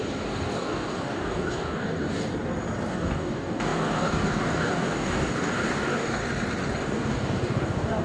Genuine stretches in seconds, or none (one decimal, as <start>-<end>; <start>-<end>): 2.3-2.9; 6.2-6.8